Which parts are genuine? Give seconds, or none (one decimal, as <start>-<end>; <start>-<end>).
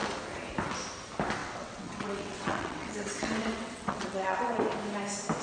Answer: 0.0-1.4; 4.6-5.4